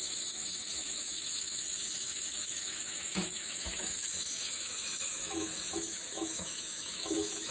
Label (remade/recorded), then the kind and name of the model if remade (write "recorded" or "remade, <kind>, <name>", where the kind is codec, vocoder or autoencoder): remade, autoencoder, DAC-VAE